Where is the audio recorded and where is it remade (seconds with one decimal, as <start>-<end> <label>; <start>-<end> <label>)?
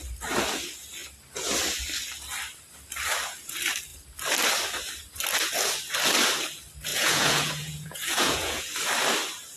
0.0-6.9 recorded; 6.9-8.7 remade; 8.7-9.6 recorded